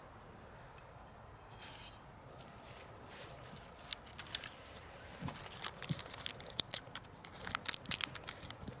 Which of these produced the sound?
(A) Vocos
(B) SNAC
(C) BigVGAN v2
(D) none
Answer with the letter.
D